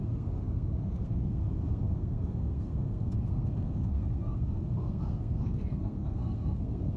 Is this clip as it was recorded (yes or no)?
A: no